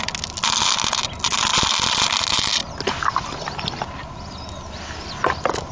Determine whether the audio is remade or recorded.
recorded